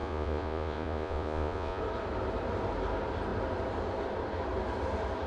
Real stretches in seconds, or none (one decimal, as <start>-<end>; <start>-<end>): 1.8-5.3